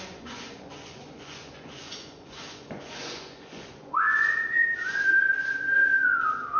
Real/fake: fake